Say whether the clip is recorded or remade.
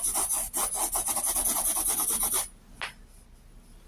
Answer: recorded